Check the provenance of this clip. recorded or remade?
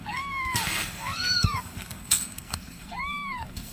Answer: remade